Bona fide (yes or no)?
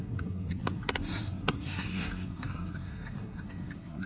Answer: no